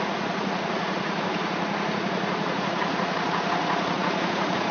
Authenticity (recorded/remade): remade